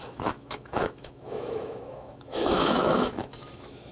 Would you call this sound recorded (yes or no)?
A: no